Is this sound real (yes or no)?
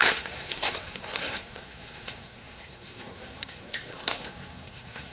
no